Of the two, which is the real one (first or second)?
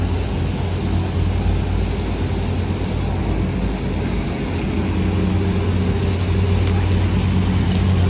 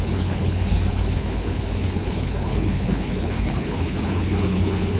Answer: first